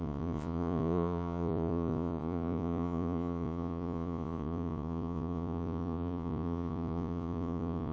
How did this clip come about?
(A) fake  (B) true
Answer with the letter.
A